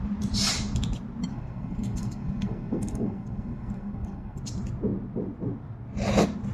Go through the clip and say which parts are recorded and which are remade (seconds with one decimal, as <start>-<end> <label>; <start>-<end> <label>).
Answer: 0.0-1.3 recorded; 1.3-4.4 remade; 4.4-6.5 recorded